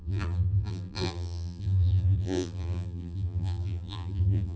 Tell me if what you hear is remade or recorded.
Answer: remade